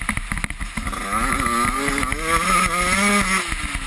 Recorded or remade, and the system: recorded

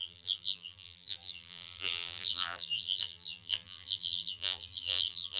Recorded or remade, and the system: remade, vocoder, BigVGAN v2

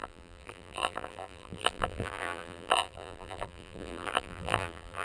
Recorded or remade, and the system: remade, vocoder, BigVGAN v2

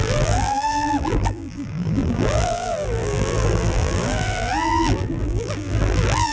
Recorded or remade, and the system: remade, vocoder, BigVGAN v2